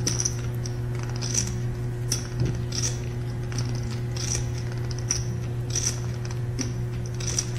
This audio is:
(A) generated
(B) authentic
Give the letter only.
B